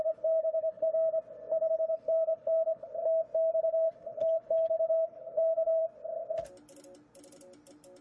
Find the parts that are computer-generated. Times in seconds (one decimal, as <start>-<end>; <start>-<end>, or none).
0.0-0.9; 1.7-2.9; 3.6-5.8